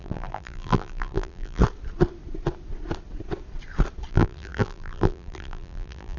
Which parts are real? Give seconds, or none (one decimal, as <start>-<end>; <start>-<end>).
1.6-4.1